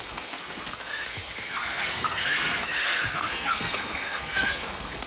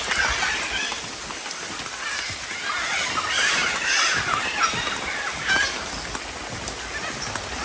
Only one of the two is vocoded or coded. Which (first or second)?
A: first